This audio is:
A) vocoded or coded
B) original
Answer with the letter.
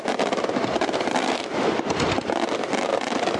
B